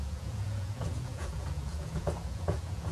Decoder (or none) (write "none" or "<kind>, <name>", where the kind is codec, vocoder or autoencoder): vocoder, Vocos